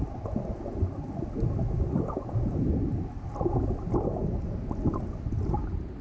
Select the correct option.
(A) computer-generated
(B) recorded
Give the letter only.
B